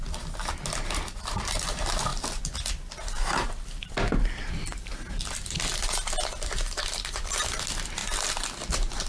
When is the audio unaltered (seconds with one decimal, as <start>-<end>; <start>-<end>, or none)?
0.0-0.6; 2.1-2.7; 8.0-9.1

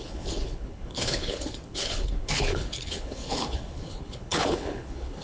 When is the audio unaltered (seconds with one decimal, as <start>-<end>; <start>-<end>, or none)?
none